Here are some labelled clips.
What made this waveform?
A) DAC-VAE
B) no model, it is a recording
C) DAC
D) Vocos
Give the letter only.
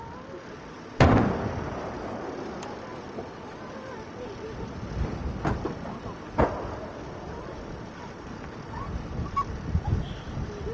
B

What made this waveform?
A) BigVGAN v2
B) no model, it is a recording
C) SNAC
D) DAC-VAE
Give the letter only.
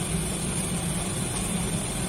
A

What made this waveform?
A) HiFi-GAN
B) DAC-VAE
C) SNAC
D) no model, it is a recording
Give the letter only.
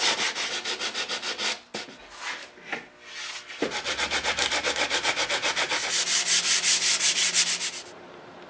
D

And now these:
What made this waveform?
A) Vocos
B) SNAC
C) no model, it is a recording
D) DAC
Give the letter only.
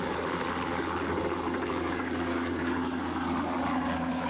D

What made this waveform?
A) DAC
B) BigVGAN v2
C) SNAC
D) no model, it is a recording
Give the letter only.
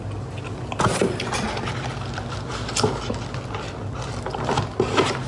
D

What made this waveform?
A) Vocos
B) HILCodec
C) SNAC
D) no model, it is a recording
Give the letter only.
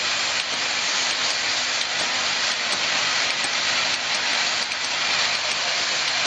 D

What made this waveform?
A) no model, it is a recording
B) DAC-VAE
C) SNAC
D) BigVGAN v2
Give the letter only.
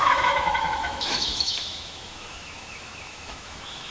B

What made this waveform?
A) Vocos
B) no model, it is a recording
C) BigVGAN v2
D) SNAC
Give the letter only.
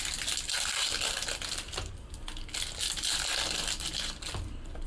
B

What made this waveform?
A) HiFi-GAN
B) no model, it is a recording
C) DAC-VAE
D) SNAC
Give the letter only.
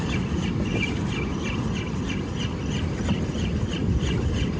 B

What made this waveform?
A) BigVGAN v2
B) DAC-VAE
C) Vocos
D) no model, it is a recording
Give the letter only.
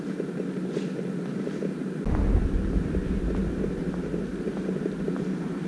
D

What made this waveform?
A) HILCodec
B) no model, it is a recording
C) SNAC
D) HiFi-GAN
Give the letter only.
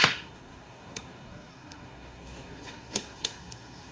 C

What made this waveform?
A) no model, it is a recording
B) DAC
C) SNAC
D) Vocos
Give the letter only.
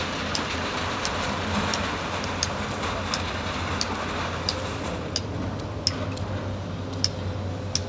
A